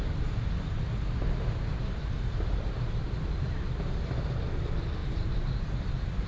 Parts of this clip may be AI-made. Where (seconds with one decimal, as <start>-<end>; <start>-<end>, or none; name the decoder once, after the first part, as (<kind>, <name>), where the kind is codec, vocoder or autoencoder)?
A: none